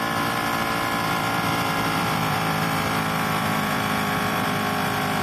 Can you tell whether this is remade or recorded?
remade